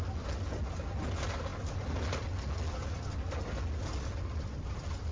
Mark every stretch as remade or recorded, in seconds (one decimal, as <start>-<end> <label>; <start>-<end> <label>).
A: 0.0-5.1 recorded